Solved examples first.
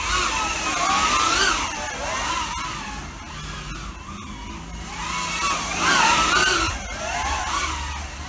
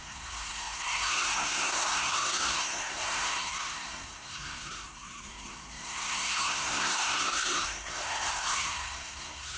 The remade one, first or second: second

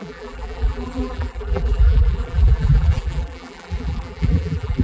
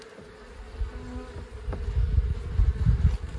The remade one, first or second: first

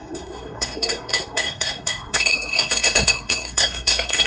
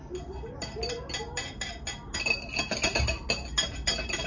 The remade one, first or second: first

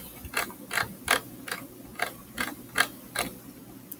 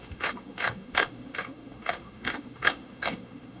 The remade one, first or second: second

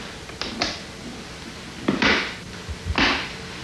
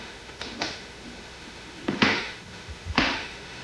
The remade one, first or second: second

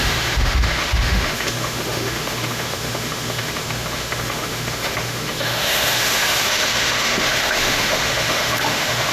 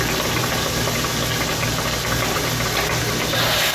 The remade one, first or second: first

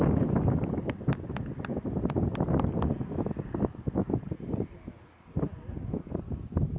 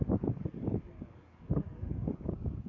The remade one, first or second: second